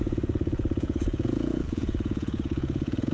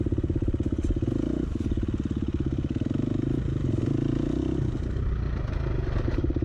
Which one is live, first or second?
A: second